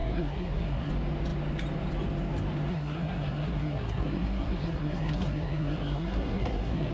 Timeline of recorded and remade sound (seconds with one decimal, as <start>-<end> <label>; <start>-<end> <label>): 0.0-0.9 remade; 0.9-2.7 recorded; 2.7-6.9 remade

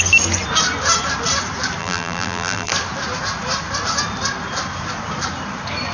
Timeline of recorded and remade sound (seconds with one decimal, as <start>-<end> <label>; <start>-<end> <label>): 0.0-1.8 recorded; 1.8-2.7 remade; 2.7-5.9 recorded

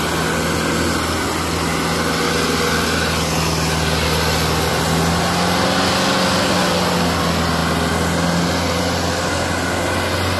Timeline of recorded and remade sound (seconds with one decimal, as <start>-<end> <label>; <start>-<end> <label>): 0.0-10.4 recorded

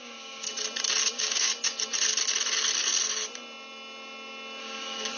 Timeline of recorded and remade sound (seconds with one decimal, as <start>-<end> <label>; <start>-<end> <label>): 0.0-0.5 remade; 0.5-1.1 recorded; 1.1-1.5 remade; 1.5-4.6 recorded; 4.6-5.2 remade

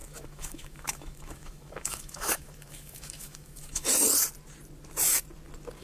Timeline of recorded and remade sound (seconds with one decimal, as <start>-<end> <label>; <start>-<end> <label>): 0.0-3.9 remade; 3.9-5.8 recorded

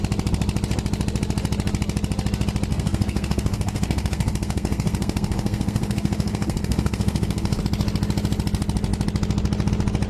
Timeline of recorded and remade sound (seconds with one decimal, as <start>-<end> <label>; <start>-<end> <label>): 0.0-2.7 recorded; 2.7-7.6 remade; 7.6-10.1 recorded